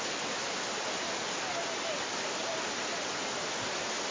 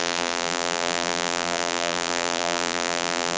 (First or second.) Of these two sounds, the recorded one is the first